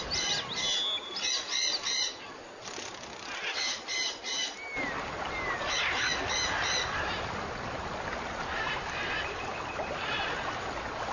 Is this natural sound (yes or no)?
yes